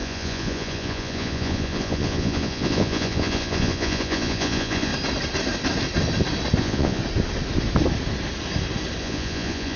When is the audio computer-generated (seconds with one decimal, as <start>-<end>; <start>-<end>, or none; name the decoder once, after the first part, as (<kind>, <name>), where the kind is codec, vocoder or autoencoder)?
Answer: 0.0-4.9 (vocoder, Vocos); 6.6-7.0; 9.0-9.8